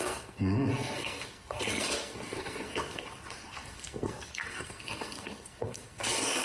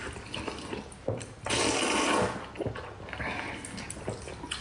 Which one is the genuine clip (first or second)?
second